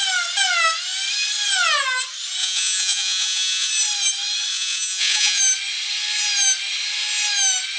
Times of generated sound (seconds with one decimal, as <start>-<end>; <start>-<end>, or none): 2.4-3.7; 4.5-5.4